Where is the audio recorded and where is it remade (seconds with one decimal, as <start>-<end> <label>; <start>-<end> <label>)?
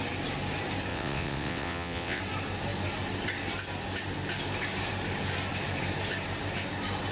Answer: 0.0-0.9 recorded; 0.9-2.2 remade; 2.2-7.1 recorded